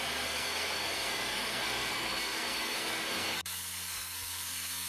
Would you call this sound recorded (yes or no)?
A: no